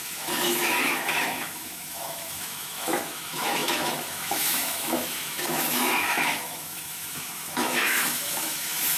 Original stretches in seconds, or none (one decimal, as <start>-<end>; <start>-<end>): none